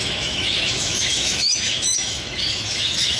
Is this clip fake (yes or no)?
yes